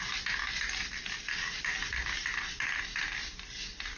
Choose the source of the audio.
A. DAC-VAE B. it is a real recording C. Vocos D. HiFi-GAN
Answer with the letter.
B